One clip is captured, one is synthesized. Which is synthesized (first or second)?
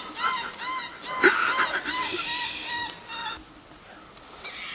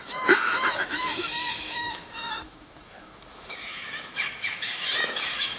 second